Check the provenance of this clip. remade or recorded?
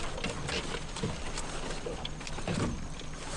recorded